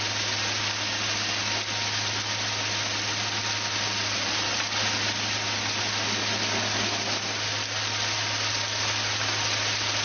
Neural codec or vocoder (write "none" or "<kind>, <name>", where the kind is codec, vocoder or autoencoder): none